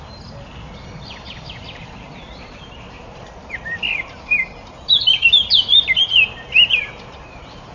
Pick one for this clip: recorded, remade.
recorded